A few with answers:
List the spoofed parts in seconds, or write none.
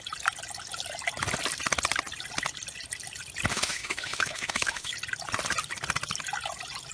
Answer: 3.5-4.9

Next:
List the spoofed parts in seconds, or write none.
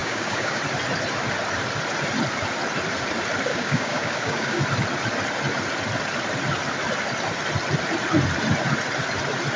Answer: 0.0-0.6; 3.5-4.6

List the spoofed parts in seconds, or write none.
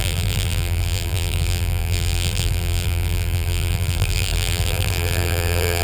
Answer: 0.0-5.8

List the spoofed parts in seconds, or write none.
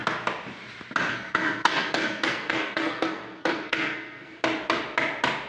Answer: 1.1-4.4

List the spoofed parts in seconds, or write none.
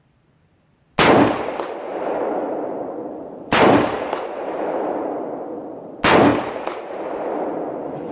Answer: 1.9-5.2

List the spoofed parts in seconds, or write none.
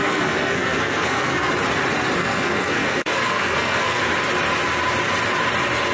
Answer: 0.0-1.5; 2.2-4.0